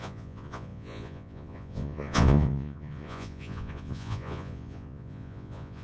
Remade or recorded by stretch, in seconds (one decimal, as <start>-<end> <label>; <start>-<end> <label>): 0.0-5.8 remade